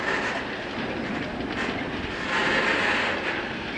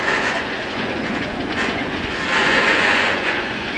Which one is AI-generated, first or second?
second